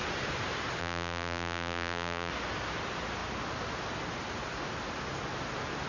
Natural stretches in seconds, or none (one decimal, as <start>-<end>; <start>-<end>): 0.0-0.8; 2.3-5.9